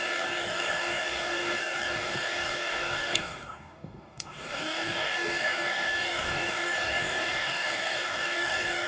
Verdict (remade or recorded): remade